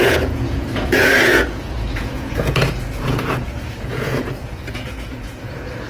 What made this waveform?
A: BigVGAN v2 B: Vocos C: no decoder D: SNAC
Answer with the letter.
B